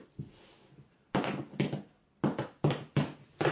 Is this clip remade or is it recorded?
recorded